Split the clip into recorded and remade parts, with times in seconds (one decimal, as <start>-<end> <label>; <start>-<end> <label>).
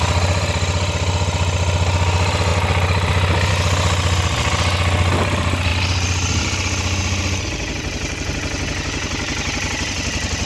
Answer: 0.0-10.5 recorded